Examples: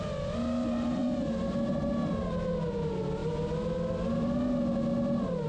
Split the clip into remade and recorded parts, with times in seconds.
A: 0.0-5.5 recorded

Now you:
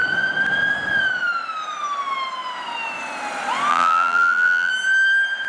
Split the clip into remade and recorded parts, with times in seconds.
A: 0.0-3.7 recorded; 3.7-4.7 remade; 4.7-5.5 recorded